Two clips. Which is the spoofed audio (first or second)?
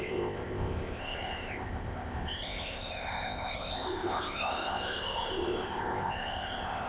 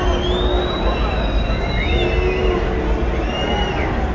first